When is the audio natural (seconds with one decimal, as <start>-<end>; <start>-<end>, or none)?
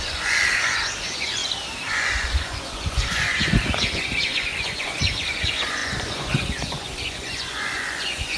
1.4-1.9